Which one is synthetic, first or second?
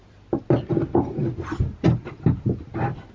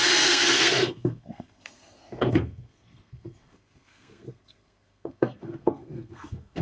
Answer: second